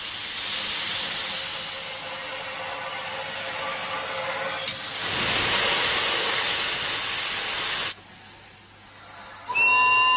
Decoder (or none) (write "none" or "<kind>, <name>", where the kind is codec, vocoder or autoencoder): none